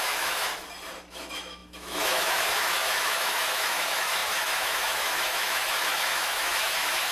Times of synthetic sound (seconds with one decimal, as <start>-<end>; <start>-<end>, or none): 0.0-0.5; 1.1-7.1